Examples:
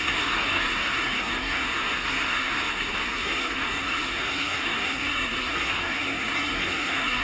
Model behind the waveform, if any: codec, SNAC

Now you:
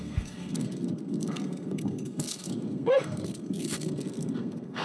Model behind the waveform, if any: codec, SNAC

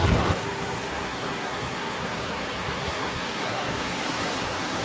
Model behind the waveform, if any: codec, SNAC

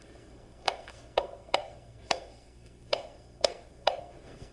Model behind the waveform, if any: codec, SNAC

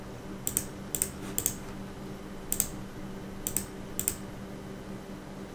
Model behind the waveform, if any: none